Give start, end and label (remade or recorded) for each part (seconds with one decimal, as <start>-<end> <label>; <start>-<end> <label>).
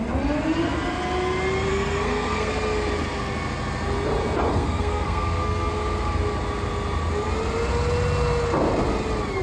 0.0-1.7 recorded; 1.7-2.5 remade; 2.5-4.5 recorded; 4.5-5.7 remade; 5.7-9.4 recorded